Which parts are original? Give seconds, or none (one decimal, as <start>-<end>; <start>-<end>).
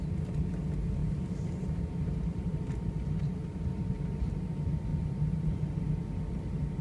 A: 0.0-1.0; 4.3-4.9; 5.5-6.8